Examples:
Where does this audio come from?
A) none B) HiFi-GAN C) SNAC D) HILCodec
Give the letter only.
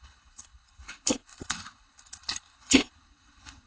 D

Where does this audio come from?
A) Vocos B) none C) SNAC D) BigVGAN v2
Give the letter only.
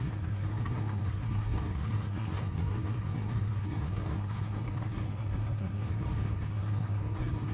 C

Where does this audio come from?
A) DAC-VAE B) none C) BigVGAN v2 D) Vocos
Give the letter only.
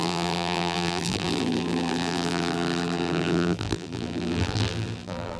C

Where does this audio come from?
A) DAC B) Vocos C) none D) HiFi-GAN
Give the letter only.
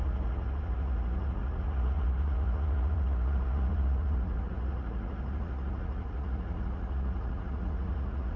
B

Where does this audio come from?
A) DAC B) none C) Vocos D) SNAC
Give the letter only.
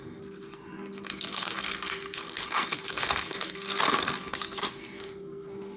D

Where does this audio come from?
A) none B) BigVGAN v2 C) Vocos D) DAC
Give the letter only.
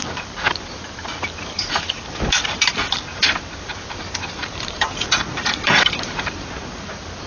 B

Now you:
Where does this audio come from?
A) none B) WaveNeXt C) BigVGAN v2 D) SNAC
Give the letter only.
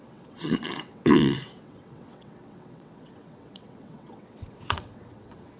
B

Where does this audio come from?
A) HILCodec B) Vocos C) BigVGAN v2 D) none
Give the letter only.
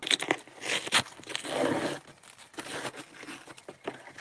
D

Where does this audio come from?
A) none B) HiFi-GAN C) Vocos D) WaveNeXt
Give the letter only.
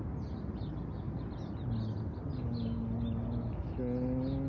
A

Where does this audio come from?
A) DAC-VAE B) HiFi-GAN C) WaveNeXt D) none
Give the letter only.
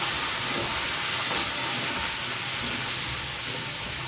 D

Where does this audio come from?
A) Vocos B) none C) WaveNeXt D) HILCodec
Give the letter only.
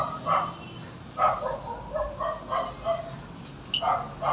B